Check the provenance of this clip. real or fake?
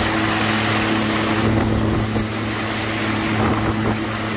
real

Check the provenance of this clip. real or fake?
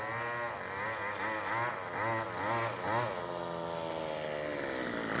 real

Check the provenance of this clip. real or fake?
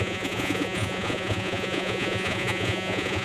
fake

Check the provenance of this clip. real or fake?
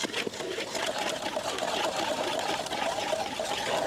real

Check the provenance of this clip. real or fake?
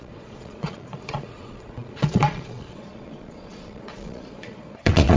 fake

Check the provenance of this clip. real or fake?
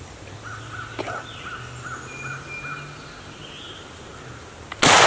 real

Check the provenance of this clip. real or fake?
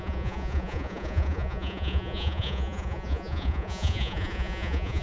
fake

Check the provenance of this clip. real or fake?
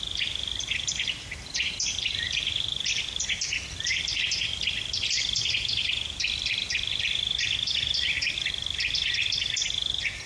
real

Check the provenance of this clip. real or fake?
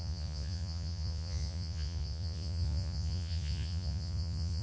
fake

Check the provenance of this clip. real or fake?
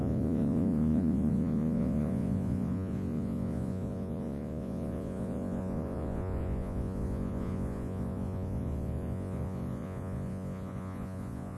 fake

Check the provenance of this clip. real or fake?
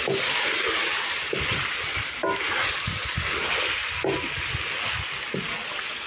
real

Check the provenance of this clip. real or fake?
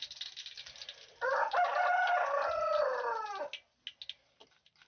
real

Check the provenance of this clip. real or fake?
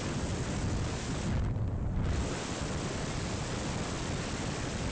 real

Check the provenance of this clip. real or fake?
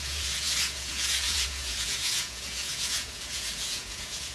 fake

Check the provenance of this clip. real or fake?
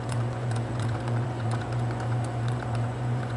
fake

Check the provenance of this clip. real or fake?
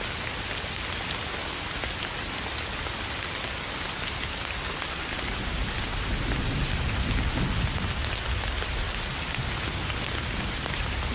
real